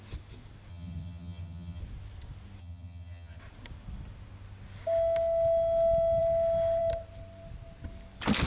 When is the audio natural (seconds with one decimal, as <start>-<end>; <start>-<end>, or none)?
0.0-0.7; 1.8-2.6; 3.4-8.5